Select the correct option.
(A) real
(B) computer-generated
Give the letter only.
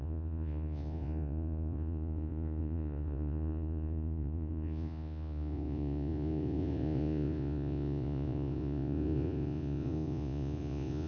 B